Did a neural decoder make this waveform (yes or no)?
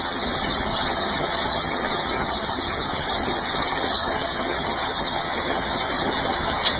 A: yes